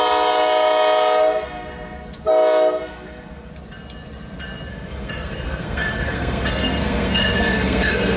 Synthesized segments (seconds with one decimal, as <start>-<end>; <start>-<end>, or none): 2.9-3.5; 4.7-8.2